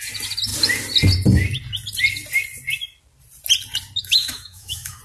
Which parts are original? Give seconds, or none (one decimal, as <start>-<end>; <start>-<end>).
0.0-4.0